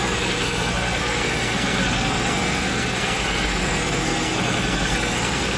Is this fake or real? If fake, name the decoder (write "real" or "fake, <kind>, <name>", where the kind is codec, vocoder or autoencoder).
fake, codec, SNAC